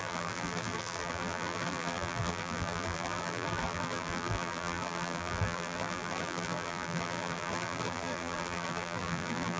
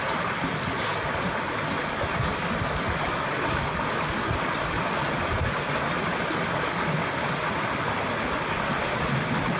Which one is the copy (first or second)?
first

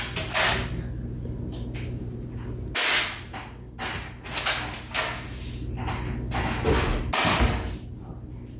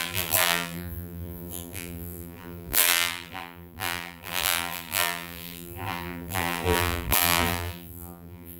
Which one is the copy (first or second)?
second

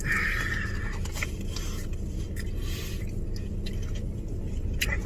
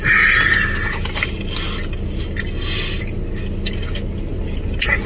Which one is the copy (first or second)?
first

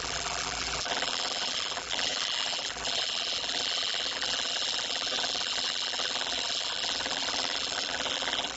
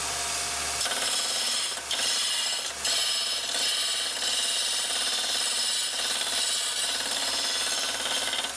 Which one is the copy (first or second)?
first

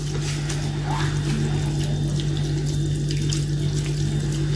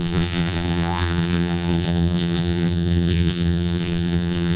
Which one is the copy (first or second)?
second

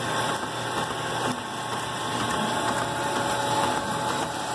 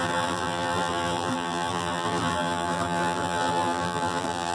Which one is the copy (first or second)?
second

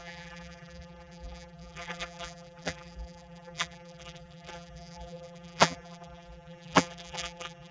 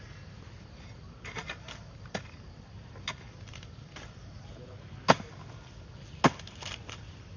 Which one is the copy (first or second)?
first